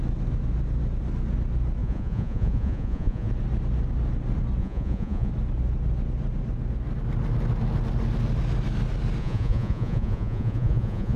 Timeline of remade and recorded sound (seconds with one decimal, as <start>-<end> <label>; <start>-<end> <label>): 0.0-1.8 recorded; 1.8-3.3 remade; 3.3-4.6 recorded; 4.6-5.3 remade; 5.3-9.2 recorded; 9.2-11.2 remade